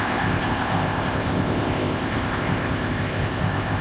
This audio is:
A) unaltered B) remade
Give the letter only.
B